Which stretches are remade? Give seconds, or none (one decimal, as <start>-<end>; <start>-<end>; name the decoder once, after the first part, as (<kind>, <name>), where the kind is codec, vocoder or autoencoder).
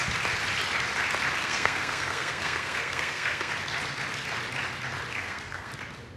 1.4-3.5 (codec, SNAC); 5.1-5.7